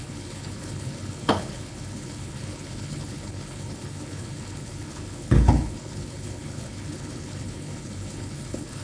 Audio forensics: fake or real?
fake